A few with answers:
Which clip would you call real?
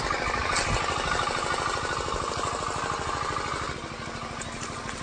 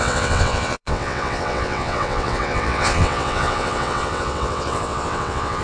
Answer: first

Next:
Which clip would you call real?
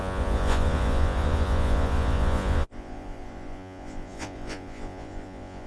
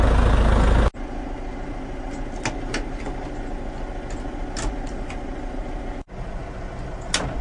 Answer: second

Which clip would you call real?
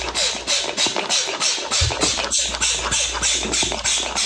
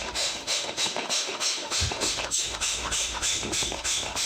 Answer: first